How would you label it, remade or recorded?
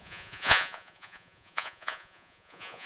remade